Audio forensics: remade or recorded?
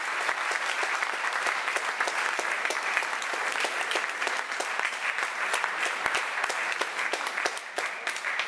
remade